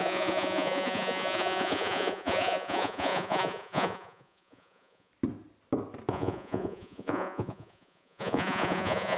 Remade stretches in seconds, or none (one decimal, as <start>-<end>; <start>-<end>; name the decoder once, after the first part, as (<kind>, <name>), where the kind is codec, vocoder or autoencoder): 0.0-5.1 (vocoder, Vocos); 6.1-9.2

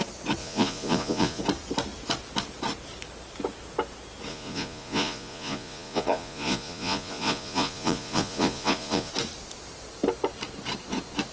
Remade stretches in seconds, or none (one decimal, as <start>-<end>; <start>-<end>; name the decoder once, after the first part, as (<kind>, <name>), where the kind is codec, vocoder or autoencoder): 0.4-1.4 (vocoder, Vocos); 4.3-9.1

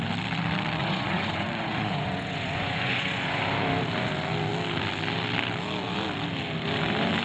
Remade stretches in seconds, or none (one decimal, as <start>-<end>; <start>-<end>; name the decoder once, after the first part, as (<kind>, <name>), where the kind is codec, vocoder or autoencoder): 0.8-3.4 (vocoder, Vocos)

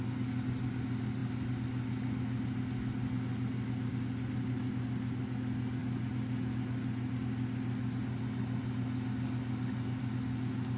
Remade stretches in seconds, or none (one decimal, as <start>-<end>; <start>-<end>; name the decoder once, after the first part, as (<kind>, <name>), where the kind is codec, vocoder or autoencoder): none

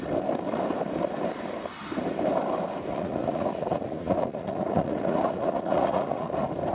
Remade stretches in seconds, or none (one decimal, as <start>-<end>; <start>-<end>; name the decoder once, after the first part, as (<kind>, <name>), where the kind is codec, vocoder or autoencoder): 2.9-6.3 (vocoder, Vocos)

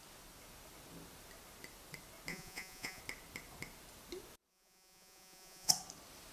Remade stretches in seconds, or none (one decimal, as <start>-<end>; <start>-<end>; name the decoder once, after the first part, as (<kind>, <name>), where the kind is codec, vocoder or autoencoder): 2.3-3.0 (vocoder, Vocos); 4.5-5.7